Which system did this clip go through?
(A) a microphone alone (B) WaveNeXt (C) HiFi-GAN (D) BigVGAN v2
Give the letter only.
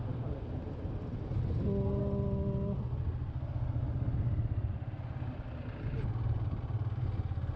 A